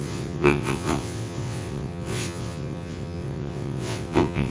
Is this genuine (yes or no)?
no